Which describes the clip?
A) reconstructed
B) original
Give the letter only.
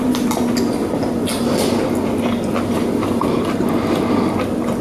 B